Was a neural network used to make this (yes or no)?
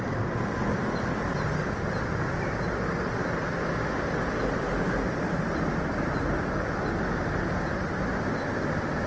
no